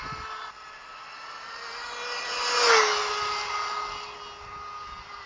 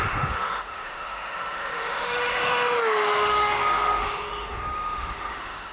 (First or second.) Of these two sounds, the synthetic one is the second